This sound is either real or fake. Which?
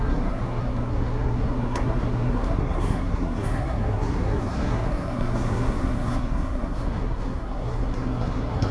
fake